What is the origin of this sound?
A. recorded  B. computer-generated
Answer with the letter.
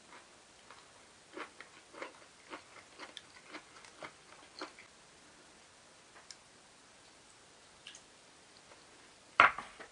A